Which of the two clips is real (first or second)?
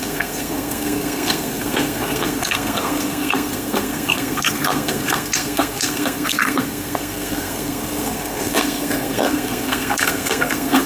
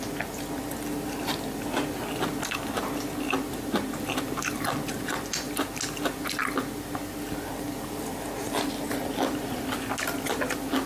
second